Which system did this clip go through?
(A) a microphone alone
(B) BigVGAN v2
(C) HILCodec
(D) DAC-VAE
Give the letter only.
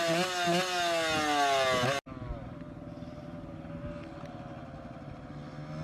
A